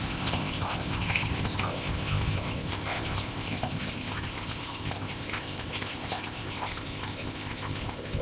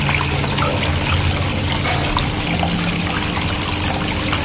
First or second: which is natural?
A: second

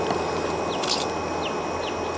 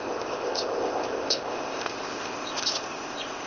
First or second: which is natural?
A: first